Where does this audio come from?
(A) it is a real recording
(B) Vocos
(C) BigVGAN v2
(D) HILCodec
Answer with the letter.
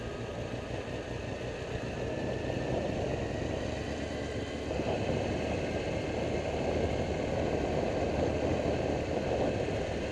A